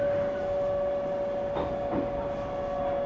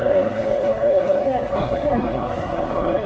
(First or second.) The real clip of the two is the first